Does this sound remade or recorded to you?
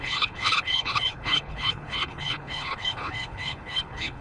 remade